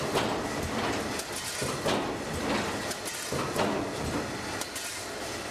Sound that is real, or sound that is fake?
real